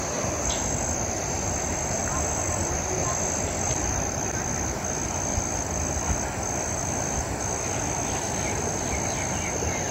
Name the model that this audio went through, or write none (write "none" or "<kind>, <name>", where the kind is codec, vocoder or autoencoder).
none